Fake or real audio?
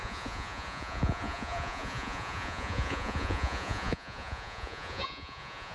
fake